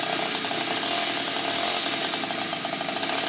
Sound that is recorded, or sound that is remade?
recorded